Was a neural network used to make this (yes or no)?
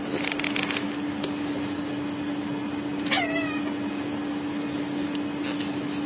no